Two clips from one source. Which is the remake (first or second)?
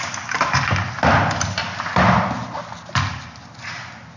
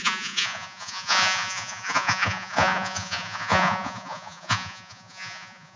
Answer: second